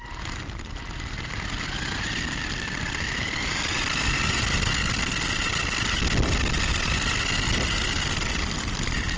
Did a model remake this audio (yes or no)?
no